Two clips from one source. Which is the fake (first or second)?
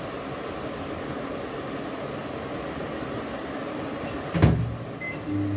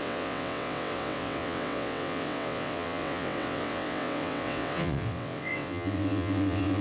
second